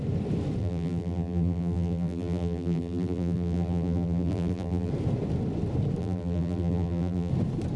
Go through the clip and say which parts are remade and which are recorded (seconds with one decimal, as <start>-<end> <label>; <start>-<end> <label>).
0.0-0.6 recorded; 0.6-4.9 remade; 4.9-6.0 recorded; 6.0-7.3 remade; 7.3-7.8 recorded